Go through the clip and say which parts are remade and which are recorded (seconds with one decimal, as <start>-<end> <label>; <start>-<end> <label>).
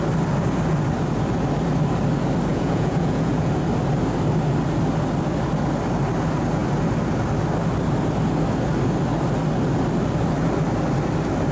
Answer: 0.0-2.5 recorded; 2.5-3.5 remade; 3.5-11.5 recorded